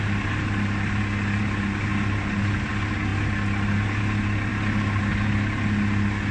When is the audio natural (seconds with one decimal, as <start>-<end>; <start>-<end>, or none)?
0.0-6.3